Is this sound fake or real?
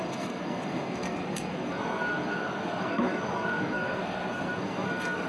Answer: fake